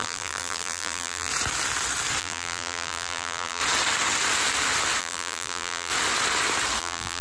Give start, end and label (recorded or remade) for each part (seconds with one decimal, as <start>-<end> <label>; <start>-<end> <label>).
0.0-1.3 remade; 1.3-2.2 recorded; 2.2-3.6 remade; 3.6-5.0 recorded; 5.0-5.9 remade; 5.9-6.8 recorded; 6.8-7.2 remade